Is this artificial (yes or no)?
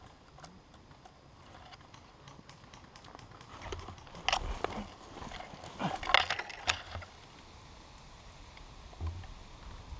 no